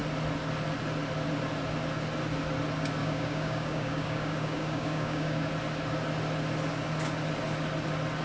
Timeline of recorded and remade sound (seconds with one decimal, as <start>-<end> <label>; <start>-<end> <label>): 0.0-3.0 recorded; 3.0-5.5 remade; 5.5-8.2 recorded